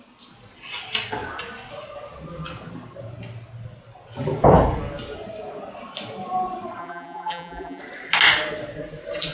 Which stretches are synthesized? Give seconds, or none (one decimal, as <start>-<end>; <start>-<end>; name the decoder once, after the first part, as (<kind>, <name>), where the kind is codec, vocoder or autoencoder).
6.8-7.8 (vocoder, BigVGAN v2)